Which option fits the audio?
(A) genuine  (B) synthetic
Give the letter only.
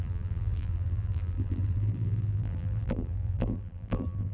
B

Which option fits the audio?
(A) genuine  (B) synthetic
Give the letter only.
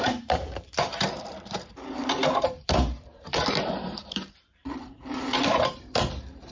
B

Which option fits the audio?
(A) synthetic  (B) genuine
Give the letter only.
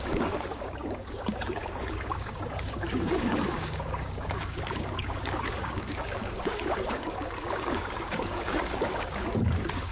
A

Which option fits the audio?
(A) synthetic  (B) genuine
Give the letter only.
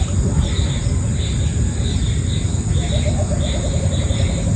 B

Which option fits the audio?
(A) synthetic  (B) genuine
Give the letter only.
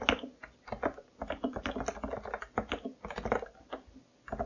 B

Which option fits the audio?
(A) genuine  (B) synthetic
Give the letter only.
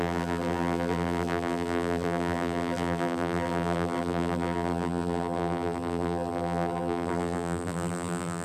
B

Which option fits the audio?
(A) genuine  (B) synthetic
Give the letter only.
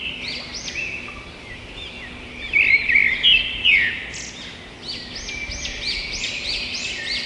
A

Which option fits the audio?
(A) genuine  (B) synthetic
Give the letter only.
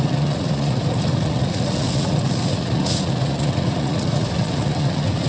B